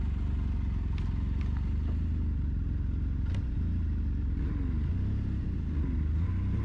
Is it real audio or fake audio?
real